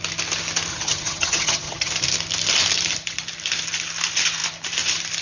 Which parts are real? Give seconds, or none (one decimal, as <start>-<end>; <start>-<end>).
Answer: 0.0-0.7; 1.9-5.2